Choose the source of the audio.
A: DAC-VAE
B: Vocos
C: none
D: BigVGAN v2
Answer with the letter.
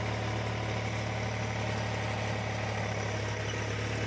C